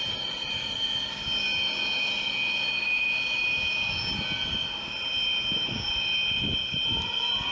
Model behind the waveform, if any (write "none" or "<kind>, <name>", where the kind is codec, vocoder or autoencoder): none